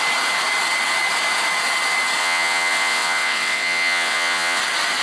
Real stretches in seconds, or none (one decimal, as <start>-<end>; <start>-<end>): 0.0-2.2; 4.6-5.0